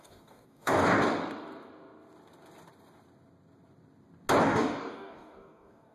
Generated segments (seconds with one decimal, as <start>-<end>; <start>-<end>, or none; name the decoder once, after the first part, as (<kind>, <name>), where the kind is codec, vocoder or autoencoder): 0.0-0.9 (codec, DAC); 4.4-5.9